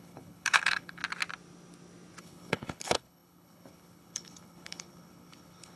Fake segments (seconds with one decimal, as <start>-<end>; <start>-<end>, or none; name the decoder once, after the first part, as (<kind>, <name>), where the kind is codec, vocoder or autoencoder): 0.0-1.0 (codec, HILCodec); 2.2-5.8